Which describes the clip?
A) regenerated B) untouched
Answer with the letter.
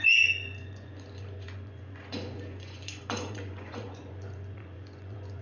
A